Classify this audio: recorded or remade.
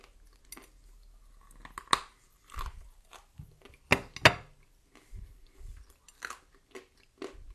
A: recorded